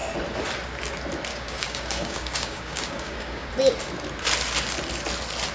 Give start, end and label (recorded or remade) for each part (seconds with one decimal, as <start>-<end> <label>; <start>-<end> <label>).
0.0-1.3 recorded; 1.3-3.5 remade; 3.5-5.5 recorded